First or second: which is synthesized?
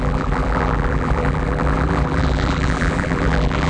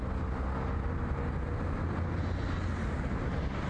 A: first